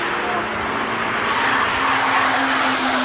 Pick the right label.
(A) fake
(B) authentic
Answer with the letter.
B